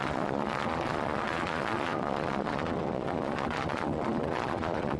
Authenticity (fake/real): fake